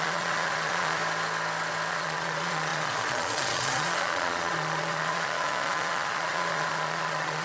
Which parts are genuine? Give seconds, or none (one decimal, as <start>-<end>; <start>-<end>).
1.0-1.9